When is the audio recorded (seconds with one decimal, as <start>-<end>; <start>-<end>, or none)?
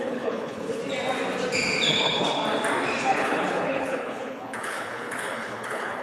0.8-1.9; 2.4-3.0